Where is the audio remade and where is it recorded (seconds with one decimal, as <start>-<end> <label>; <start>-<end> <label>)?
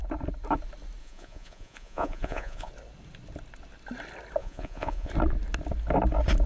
0.0-1.0 recorded; 1.0-2.7 remade; 2.7-4.4 recorded; 4.4-5.1 remade; 5.1-6.5 recorded